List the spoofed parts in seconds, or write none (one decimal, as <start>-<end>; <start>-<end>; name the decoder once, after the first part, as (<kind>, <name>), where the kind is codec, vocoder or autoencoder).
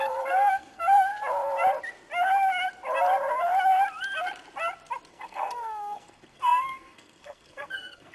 0.0-1.1 (codec, SNAC); 5.1-8.1